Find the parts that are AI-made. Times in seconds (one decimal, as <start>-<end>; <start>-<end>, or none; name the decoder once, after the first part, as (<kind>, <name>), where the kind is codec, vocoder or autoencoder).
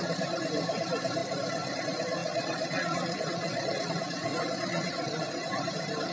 2.2-3.9 (vocoder, Vocos); 4.3-5.5